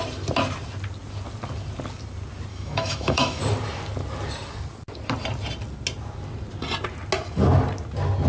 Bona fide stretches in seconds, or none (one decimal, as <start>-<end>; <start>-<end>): 0.0-2.5; 3.4-8.3